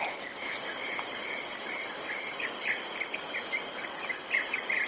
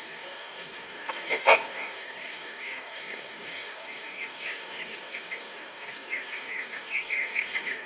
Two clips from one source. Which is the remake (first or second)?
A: second